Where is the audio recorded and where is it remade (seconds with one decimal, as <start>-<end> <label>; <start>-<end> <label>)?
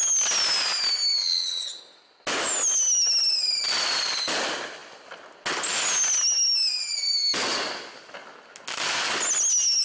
0.0-1.2 recorded; 1.2-1.8 remade; 1.8-9.8 recorded